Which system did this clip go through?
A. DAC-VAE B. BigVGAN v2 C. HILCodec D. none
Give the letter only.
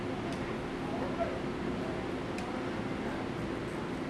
D